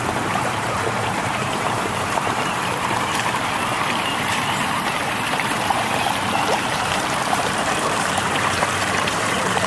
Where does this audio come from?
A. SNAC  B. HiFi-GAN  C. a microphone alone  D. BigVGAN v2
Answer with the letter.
D